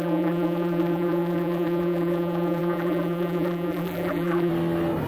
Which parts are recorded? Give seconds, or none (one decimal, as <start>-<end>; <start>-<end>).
4.5-5.1